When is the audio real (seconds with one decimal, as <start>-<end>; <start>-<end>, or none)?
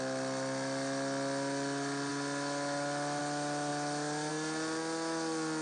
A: 0.0-5.6